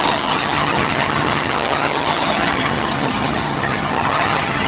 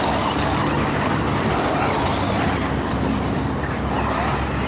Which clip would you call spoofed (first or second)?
first